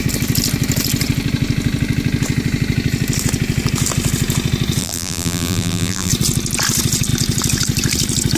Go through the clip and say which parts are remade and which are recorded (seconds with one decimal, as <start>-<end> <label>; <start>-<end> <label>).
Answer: 0.0-4.8 recorded; 4.8-6.1 remade; 6.1-8.4 recorded